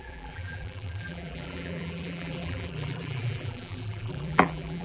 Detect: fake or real fake